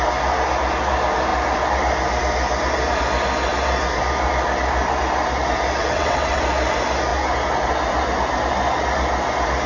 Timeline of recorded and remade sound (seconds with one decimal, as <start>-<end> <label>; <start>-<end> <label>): 0.0-5.8 recorded; 5.8-6.4 remade; 6.4-9.7 recorded